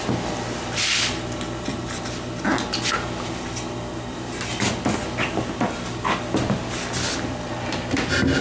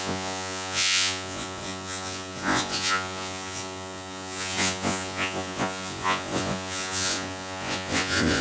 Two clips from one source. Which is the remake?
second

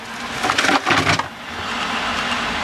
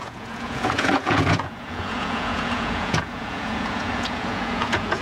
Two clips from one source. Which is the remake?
second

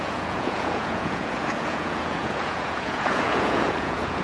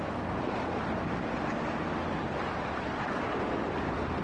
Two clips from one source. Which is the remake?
first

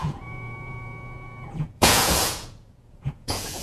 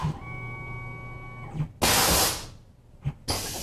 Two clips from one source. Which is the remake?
first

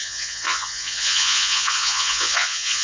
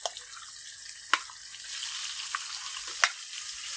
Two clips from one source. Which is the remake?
first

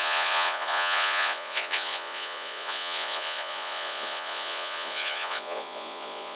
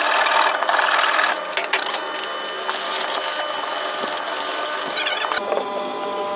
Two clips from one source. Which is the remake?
first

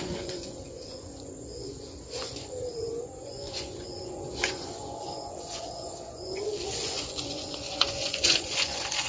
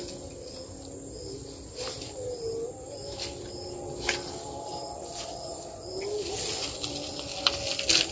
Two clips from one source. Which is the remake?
first